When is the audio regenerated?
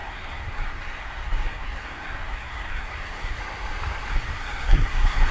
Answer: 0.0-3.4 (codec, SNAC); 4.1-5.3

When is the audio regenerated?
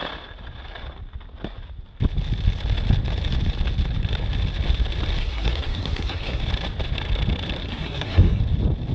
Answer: 5.2-6.4 (codec, SNAC); 7.6-8.4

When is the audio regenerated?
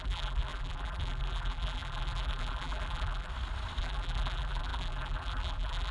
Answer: 0.0-3.3 (vocoder, BigVGAN v2); 3.8-5.9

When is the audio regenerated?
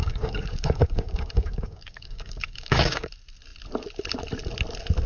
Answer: 0.0-3.1 (codec, DAC)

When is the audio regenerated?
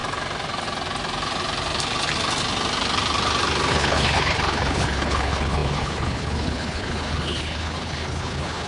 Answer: 3.7-8.7 (codec, HILCodec)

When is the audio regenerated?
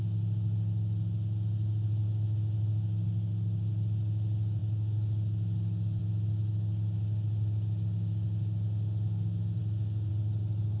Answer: none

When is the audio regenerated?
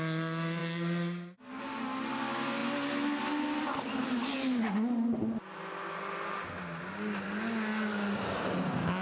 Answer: none